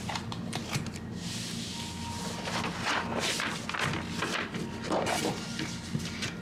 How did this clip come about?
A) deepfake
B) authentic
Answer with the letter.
B